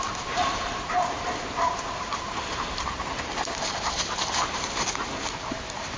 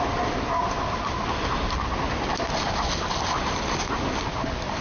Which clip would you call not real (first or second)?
first